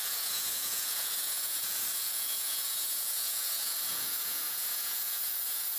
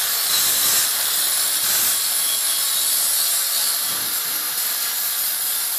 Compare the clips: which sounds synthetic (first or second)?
first